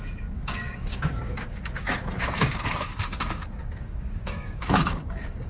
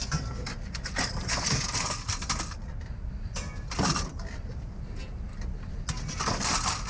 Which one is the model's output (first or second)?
first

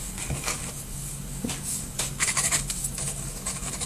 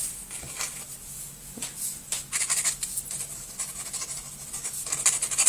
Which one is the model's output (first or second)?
first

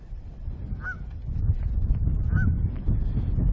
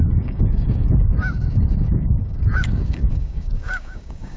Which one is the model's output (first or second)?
second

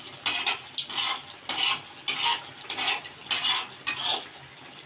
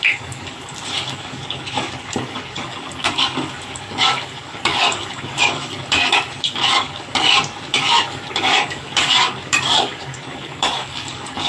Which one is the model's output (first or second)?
second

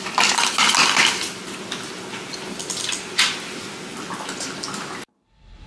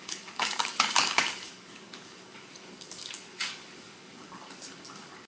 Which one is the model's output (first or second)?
second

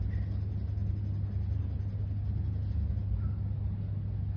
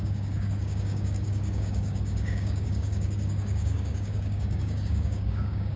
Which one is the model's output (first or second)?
second